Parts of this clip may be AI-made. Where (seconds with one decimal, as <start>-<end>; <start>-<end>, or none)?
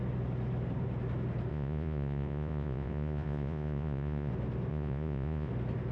1.5-4.3; 4.7-5.5